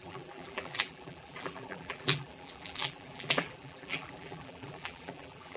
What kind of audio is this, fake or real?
fake